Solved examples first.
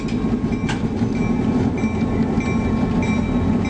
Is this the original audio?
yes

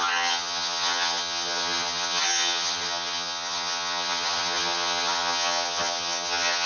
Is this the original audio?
no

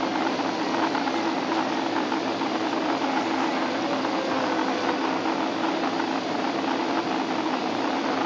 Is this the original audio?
yes